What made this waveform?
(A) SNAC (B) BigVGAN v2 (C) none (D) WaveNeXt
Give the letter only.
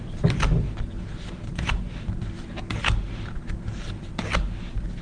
C